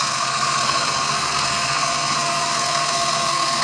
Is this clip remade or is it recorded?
remade